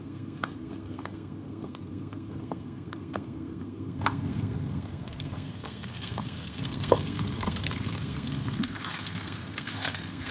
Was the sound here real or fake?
fake